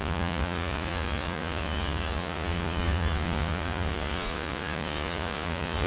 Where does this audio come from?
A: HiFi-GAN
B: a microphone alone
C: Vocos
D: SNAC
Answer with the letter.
C